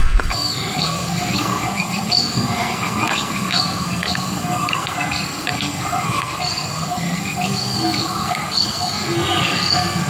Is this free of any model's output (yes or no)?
no